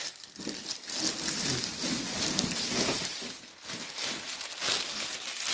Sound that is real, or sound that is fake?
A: real